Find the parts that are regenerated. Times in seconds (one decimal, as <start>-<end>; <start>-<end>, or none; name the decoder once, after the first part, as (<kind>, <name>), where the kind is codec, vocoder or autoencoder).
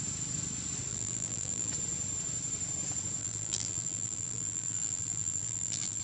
0.9-1.7 (vocoder, BigVGAN v2); 3.2-6.0